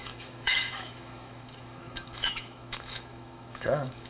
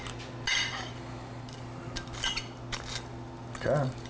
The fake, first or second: first